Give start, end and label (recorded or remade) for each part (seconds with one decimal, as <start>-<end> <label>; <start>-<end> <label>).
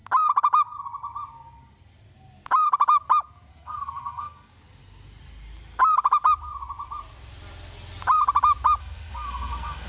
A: 0.0-3.5 recorded; 3.5-4.5 remade; 4.5-8.8 recorded; 8.8-9.9 remade